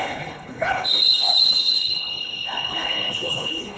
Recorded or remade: remade